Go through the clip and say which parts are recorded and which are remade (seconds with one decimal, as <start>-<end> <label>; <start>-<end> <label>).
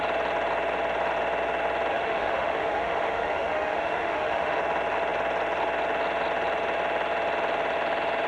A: 0.0-1.9 recorded; 1.9-4.6 remade; 4.6-8.3 recorded